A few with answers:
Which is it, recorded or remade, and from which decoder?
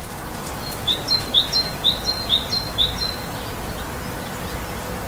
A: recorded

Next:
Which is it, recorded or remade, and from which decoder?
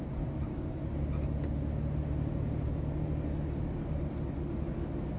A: recorded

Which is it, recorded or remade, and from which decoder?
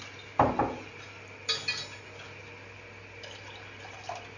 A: recorded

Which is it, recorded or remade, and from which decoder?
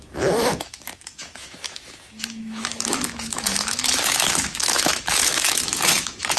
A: remade, autoencoder, DAC-VAE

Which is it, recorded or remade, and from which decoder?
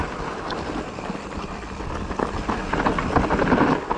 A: recorded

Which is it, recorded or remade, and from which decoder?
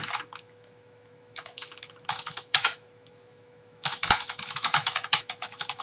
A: remade, autoencoder, DAC-VAE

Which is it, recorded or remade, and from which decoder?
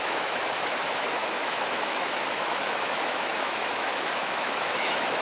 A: remade, autoencoder, DAC-VAE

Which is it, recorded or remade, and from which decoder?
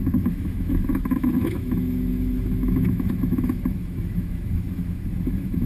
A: remade, autoencoder, DAC-VAE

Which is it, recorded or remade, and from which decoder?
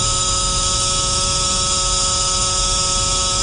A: remade, autoencoder, DAC-VAE